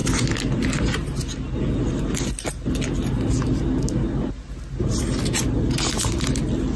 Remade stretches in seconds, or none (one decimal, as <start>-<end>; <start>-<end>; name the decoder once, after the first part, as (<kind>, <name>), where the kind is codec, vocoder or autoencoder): none